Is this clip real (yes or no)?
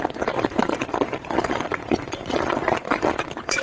no